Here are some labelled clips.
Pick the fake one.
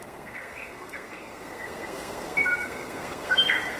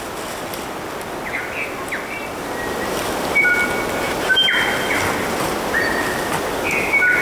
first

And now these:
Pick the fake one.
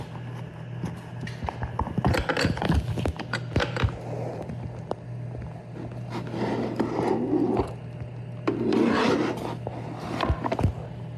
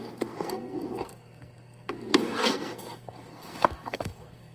second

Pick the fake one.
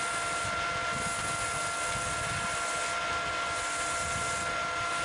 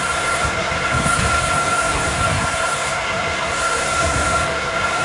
second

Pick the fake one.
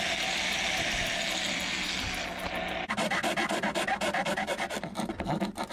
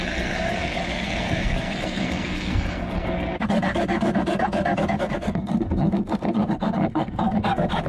second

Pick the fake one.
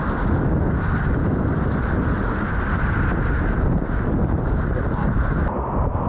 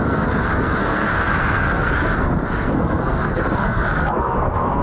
second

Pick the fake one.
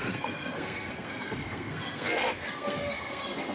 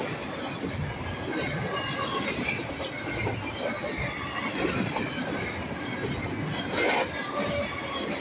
first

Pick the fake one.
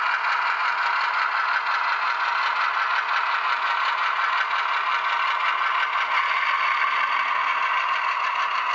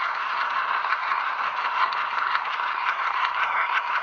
second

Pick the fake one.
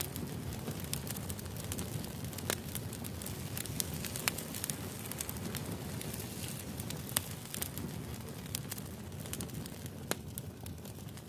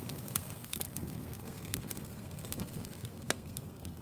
second